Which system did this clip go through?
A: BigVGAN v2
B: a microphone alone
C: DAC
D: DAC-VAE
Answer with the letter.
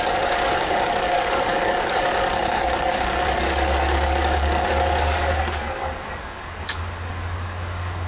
C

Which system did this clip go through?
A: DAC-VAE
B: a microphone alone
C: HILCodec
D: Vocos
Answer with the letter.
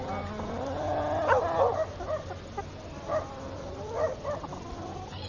B